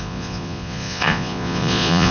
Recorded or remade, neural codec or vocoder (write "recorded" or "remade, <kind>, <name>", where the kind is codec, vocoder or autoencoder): remade, vocoder, Vocos